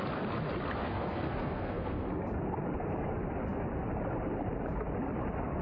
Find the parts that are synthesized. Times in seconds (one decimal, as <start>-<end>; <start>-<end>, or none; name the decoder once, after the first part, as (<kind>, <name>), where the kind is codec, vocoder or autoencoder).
0.8-2.1 (codec, SNAC)